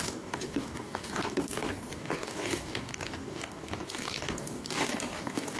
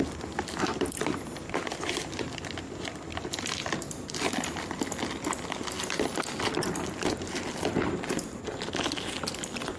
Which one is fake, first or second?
first